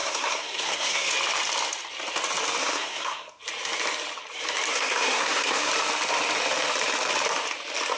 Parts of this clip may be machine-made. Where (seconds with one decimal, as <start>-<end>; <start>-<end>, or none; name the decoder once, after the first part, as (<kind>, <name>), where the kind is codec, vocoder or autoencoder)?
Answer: 0.0-1.1 (codec, SNAC); 2.6-3.4; 4.7-5.7